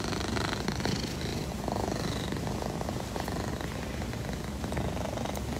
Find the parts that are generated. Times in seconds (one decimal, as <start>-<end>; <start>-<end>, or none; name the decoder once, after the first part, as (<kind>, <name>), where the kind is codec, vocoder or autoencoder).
1.3-4.6 (vocoder, BigVGAN v2)